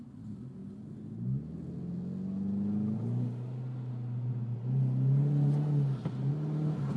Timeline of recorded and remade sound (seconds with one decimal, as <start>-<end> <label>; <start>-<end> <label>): 0.0-7.0 recorded